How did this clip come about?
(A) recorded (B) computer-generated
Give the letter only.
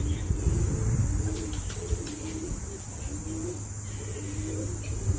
A